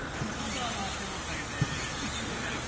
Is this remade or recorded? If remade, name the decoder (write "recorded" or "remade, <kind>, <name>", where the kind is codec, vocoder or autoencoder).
recorded